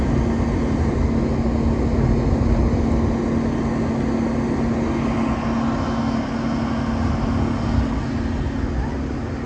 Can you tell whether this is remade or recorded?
recorded